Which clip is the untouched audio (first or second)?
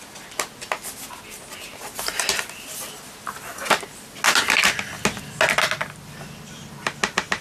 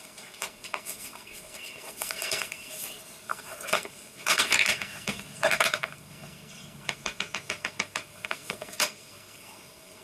first